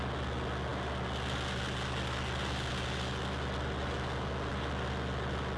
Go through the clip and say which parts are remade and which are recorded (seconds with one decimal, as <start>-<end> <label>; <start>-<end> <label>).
0.0-5.6 recorded